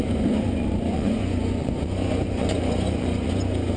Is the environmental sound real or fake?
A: fake